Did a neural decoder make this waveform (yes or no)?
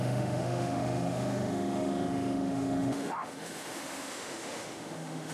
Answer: yes